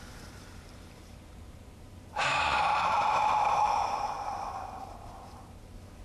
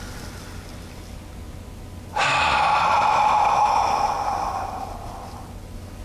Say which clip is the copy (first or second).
first